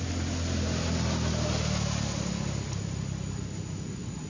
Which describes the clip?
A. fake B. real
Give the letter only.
B